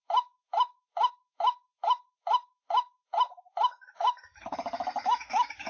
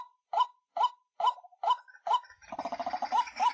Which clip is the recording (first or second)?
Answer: second